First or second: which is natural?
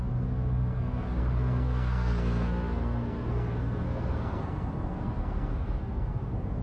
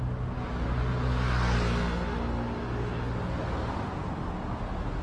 second